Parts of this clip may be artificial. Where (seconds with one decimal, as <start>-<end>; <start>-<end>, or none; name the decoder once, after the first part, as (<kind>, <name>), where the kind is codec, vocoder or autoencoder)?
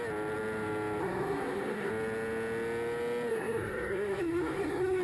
1.0-1.9 (codec, SNAC); 3.3-5.0